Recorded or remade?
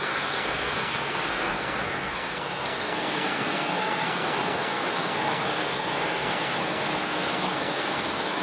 remade